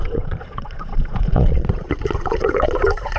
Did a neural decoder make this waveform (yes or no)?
yes